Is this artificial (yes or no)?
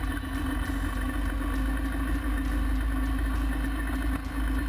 no